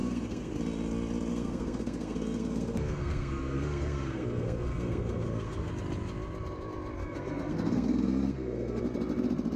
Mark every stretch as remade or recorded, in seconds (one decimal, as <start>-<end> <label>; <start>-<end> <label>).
0.0-0.6 remade; 0.6-1.3 recorded; 1.3-5.7 remade; 5.7-7.0 recorded; 7.0-8.8 remade; 8.8-9.6 recorded